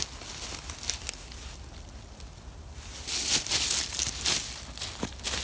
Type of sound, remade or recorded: recorded